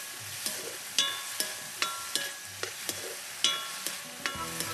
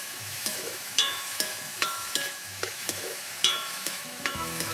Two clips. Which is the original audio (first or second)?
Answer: first